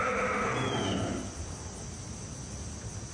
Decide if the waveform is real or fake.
real